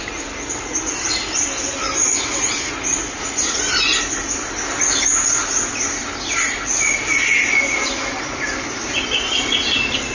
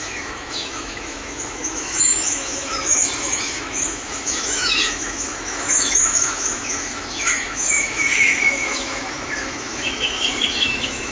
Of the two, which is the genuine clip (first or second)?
first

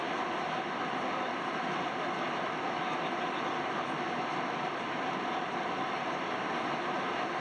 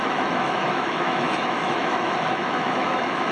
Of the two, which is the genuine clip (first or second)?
first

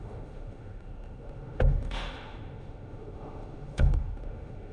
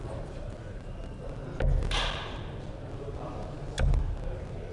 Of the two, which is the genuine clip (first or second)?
second